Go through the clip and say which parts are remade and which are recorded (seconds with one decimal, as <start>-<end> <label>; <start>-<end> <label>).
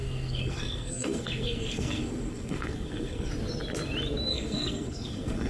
0.0-3.3 remade; 3.3-4.3 recorded; 4.3-5.5 remade